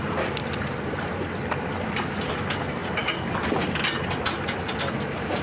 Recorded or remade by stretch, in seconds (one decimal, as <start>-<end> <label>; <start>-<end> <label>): 0.0-5.4 recorded